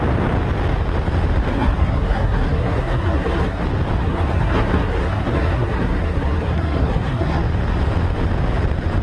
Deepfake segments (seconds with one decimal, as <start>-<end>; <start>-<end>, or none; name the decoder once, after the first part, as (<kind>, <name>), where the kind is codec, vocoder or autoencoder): 1.5-3.6 (codec, SNAC); 4.0-7.4